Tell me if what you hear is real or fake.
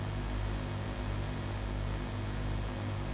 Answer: real